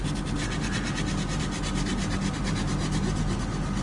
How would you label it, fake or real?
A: real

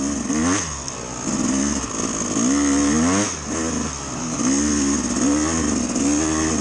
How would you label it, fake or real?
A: real